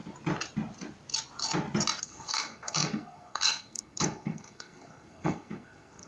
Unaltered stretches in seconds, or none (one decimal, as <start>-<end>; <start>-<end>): 0.0-2.0